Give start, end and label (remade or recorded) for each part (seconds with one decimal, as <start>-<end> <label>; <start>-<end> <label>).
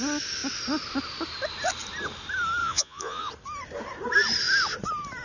0.0-2.6 recorded; 2.6-3.3 remade; 3.3-5.2 recorded